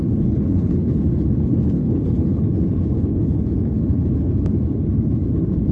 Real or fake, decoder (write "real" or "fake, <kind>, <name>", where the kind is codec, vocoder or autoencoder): fake, codec, HILCodec